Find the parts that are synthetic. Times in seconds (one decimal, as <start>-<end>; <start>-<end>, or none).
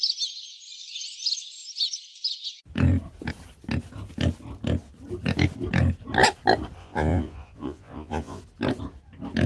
6.8-8.4